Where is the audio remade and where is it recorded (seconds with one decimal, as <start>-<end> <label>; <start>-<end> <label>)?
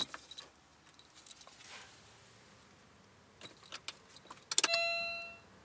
0.0-5.6 recorded